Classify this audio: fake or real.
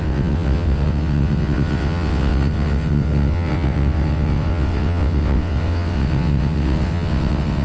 fake